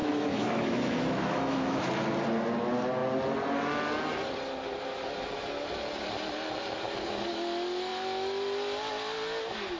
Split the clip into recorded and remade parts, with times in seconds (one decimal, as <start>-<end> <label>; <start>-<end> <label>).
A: 0.0-1.9 remade; 1.9-9.8 recorded

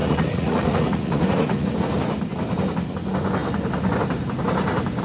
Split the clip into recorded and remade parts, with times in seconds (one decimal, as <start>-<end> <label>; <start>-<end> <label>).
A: 0.0-1.7 remade; 1.7-5.0 recorded

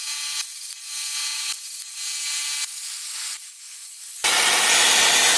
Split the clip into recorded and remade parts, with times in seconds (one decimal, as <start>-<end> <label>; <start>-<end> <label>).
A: 0.0-5.4 recorded

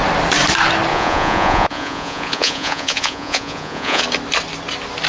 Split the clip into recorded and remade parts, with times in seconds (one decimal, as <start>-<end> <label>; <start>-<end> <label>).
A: 0.0-0.9 recorded; 0.9-4.0 remade; 4.0-5.1 recorded